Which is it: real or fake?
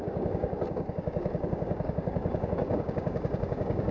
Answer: fake